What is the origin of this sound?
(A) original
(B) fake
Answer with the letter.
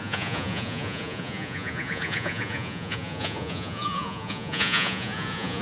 B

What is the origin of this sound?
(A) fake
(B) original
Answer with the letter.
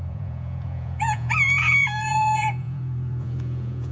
A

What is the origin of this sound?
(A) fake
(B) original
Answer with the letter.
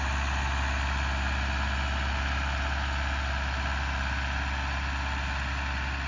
B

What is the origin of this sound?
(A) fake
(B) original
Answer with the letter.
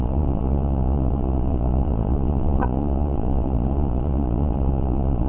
A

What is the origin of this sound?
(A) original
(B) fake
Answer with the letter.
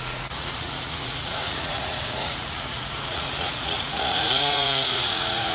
B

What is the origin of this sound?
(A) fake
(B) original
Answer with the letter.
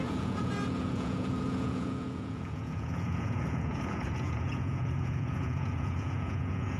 A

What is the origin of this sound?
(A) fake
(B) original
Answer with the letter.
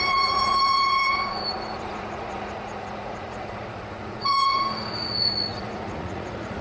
A